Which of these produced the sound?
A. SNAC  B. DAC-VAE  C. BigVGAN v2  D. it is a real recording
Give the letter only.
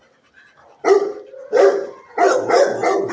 D